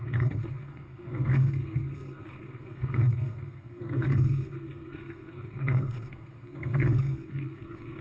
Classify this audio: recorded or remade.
remade